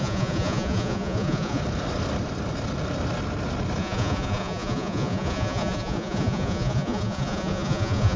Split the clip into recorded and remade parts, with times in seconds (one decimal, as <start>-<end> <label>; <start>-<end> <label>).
0.0-1.6 remade; 1.6-3.8 recorded; 3.8-8.2 remade